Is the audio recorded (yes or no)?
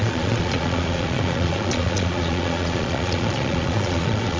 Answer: no